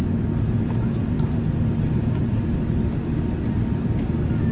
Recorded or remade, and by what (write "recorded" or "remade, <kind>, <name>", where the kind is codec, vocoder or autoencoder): recorded